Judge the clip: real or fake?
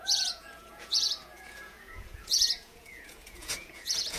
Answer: fake